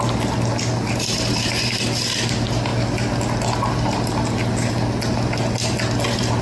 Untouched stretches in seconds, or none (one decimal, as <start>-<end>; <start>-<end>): 0.0-6.4